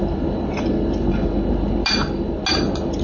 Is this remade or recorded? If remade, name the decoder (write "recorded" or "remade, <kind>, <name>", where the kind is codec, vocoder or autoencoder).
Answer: recorded